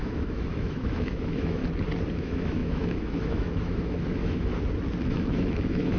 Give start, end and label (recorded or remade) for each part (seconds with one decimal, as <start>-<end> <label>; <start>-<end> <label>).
0.0-1.6 remade; 1.6-2.1 recorded; 2.1-4.5 remade; 4.5-5.1 recorded; 5.1-6.0 remade